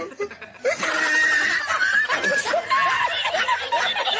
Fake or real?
real